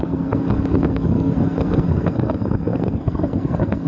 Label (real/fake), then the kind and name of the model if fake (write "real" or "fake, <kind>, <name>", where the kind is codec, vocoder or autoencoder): fake, codec, SNAC